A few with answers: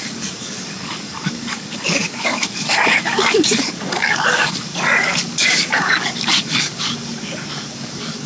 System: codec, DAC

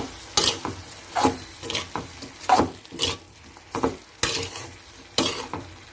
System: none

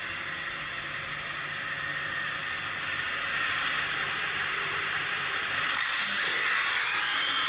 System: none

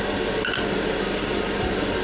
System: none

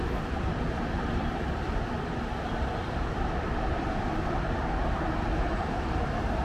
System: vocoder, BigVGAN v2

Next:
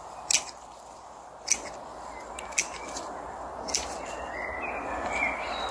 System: none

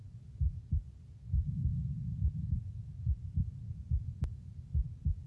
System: none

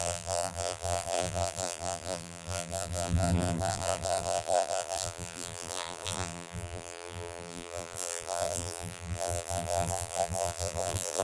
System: vocoder, BigVGAN v2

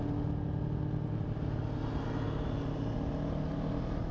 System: none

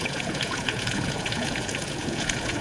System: vocoder, Vocos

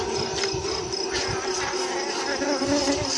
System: none